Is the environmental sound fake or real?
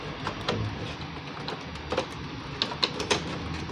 real